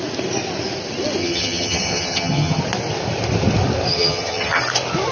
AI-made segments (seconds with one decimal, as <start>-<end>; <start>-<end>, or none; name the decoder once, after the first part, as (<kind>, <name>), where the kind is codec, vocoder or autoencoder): 1.2-2.6 (vocoder, HiFi-GAN); 3.9-4.6